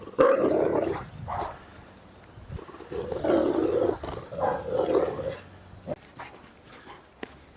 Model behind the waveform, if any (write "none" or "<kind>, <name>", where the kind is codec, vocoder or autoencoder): none